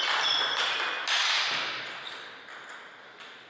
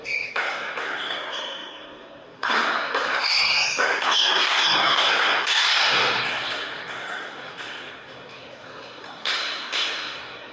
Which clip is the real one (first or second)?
first